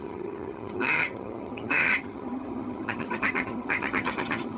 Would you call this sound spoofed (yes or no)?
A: yes